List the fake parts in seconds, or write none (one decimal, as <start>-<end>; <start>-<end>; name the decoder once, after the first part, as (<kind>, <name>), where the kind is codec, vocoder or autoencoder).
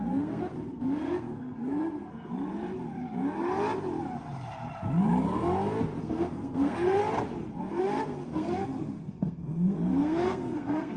0.0-2.3 (codec, SNAC); 6.0-7.0; 7.8-11.0